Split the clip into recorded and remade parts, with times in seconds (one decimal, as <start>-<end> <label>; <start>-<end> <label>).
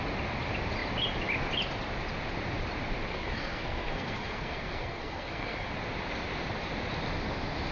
0.0-3.1 recorded; 3.1-5.7 remade; 5.7-7.7 recorded